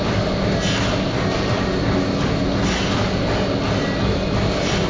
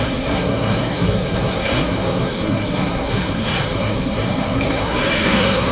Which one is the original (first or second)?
first